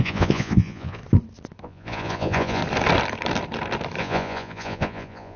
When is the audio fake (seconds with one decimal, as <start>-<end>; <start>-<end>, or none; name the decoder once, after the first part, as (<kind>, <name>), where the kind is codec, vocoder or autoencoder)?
0.0-1.0 (vocoder, Vocos); 1.6-2.6; 4.0-5.4